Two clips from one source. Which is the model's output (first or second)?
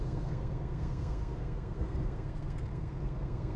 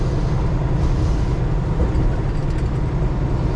first